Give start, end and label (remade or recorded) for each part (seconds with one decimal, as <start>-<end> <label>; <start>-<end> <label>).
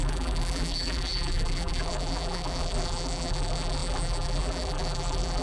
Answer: 0.0-5.4 remade